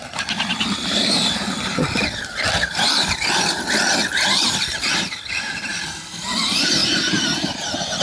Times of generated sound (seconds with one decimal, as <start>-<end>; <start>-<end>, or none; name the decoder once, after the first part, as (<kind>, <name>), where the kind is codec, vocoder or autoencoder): 0.0-4.0 (vocoder, BigVGAN v2); 4.5-6.8